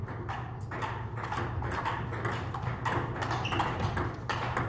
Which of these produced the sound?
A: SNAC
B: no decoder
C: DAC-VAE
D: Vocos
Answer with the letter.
B